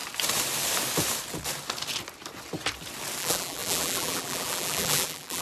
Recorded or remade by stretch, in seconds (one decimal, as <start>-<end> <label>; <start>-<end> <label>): 0.0-3.2 recorded; 3.2-5.4 remade